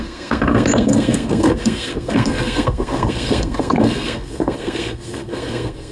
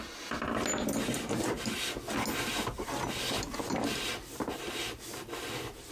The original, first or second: second